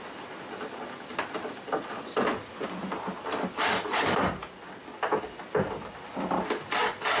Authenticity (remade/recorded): recorded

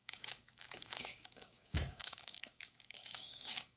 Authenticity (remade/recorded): remade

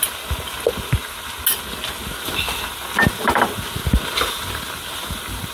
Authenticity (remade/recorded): recorded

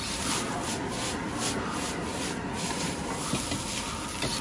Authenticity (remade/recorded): recorded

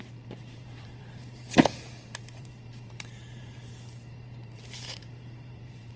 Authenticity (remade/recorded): remade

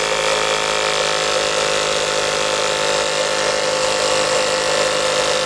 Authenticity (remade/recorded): recorded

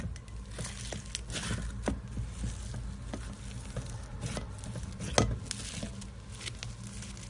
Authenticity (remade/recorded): recorded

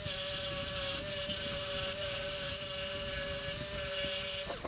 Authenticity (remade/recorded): recorded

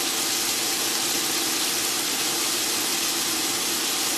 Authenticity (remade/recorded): recorded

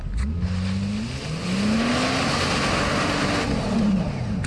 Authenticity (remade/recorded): recorded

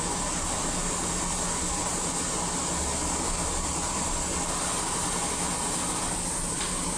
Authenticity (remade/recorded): recorded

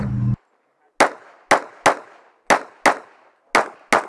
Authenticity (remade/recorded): recorded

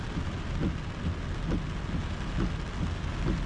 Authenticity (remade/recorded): recorded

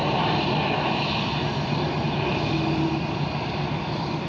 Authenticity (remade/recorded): recorded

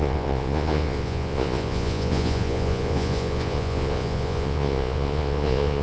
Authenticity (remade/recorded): remade